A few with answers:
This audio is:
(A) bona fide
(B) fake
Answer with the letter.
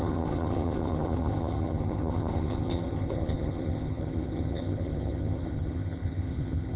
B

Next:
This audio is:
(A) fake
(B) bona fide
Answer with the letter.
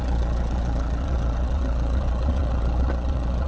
A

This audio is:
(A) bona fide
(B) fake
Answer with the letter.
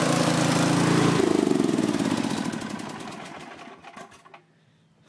A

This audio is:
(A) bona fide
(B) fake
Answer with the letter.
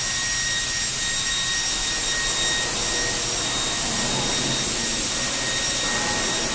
A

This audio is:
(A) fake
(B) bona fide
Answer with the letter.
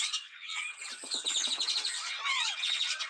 A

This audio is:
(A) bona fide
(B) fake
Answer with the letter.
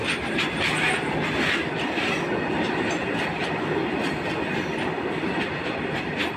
A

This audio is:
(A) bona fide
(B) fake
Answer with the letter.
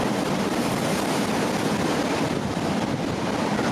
B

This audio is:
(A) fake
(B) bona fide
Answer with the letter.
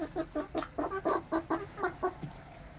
B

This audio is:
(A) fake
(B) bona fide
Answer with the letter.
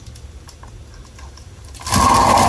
B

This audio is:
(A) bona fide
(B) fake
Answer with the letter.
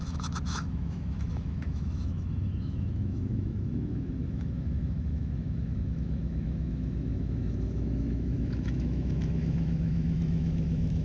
B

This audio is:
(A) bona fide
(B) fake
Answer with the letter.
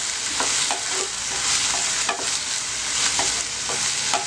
A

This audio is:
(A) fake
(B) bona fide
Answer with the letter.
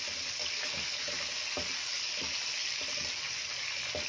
B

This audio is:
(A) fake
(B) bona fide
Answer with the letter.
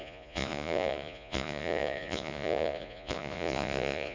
A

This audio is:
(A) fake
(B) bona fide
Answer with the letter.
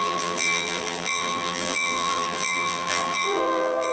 A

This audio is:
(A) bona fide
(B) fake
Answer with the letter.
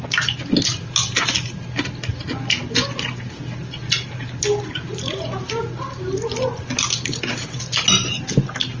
A